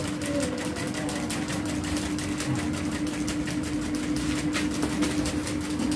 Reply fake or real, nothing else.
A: real